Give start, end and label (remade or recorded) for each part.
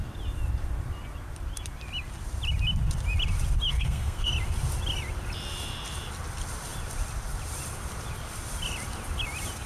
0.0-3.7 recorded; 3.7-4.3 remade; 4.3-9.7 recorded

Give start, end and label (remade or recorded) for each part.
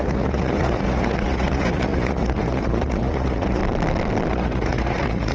0.0-3.6 remade; 3.6-4.3 recorded; 4.3-5.3 remade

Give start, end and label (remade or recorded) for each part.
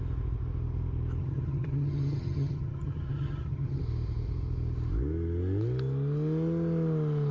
0.0-1.2 recorded; 1.2-3.8 remade; 3.8-7.3 recorded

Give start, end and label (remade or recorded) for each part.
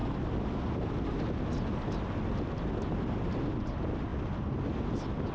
0.0-0.6 remade; 0.6-5.3 recorded